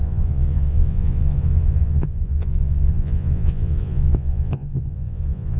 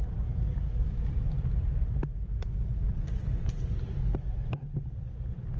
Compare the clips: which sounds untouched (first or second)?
second